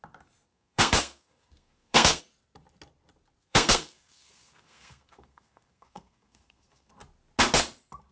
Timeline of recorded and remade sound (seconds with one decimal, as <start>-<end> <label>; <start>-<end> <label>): 0.0-0.5 recorded; 0.5-2.2 remade; 2.2-3.4 recorded; 3.4-6.9 remade; 6.9-8.1 recorded